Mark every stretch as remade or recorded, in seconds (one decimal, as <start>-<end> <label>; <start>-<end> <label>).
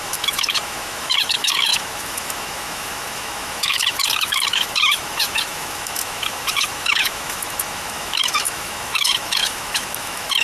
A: 0.0-10.4 remade